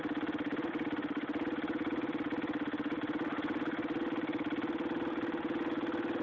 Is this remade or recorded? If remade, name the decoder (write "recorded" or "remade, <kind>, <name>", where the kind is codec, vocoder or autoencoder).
recorded